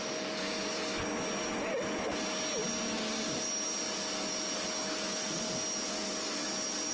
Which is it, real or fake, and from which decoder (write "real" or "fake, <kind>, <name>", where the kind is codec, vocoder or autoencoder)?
real